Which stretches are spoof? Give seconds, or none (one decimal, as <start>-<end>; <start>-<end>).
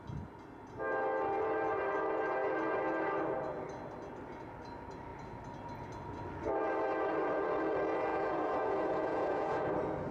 8.1-9.7